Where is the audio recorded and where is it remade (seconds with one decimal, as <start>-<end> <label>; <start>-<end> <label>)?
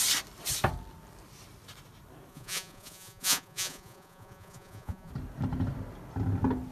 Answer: 0.0-2.3 recorded; 2.3-5.1 remade; 5.1-6.7 recorded